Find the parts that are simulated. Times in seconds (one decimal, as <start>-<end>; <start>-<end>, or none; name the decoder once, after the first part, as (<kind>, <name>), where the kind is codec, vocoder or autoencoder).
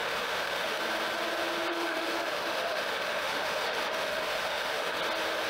0.0-0.8 (autoencoder, DAC-VAE); 1.7-5.0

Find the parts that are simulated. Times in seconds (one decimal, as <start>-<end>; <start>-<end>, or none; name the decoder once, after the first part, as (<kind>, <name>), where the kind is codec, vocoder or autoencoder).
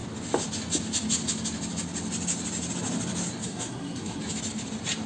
3.4-4.2 (codec, SNAC)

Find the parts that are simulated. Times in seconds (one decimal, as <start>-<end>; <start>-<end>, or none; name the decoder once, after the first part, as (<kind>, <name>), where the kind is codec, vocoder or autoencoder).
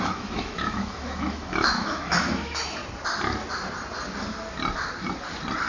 0.0-2.8 (autoencoder, DAC-VAE)